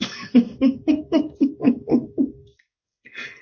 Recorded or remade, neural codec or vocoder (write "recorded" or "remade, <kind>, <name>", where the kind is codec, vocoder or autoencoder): remade, codec, SNAC